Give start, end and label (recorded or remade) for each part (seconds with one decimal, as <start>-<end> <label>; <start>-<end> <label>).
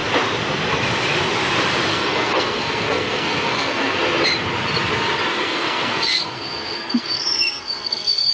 0.0-1.9 recorded; 1.9-4.0 remade; 4.0-5.4 recorded; 5.4-8.3 remade